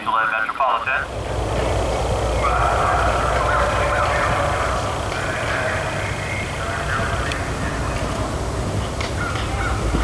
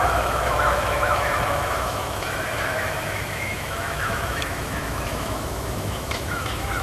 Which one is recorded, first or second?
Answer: first